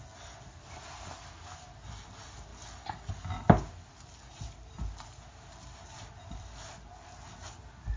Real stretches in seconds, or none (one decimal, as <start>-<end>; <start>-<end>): 0.0-8.0